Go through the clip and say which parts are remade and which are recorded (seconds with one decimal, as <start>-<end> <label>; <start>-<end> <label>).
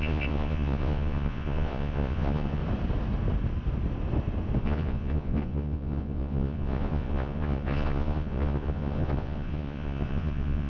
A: 0.0-2.6 remade; 2.6-4.6 recorded; 4.6-10.7 remade